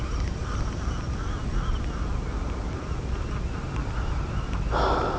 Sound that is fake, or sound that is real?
real